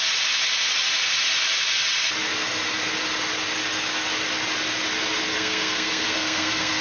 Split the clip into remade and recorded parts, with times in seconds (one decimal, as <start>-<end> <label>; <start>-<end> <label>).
0.0-5.3 recorded; 5.3-6.8 remade